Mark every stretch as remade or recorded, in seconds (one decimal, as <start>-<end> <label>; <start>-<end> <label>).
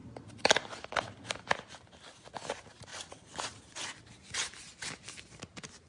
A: 0.0-0.7 remade; 0.7-2.9 recorded; 2.9-4.0 remade; 4.0-5.9 recorded